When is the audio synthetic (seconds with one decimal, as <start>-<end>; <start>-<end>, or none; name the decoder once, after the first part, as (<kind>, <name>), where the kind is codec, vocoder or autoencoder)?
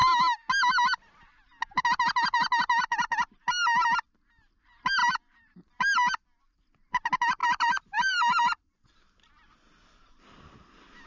5.0-5.8 (vocoder, BigVGAN v2); 7.4-8.9